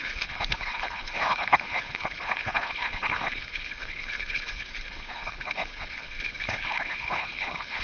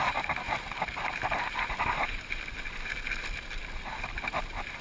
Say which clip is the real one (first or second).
second